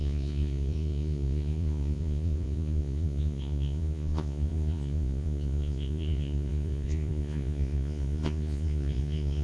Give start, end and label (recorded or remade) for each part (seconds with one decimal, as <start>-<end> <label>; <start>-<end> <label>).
0.0-9.4 remade